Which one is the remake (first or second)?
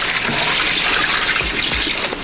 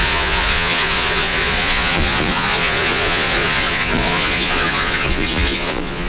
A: second